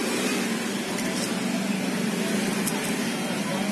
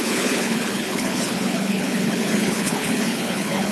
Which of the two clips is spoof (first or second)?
second